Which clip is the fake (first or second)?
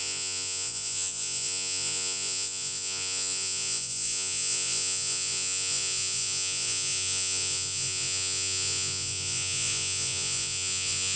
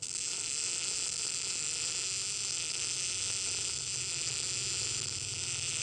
first